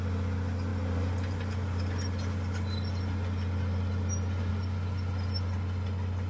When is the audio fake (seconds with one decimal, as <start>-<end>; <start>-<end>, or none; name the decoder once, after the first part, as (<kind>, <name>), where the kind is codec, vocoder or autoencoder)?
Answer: none